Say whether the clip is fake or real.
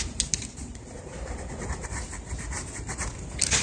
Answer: real